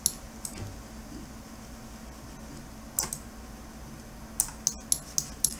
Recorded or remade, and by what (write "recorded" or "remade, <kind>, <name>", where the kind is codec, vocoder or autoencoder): recorded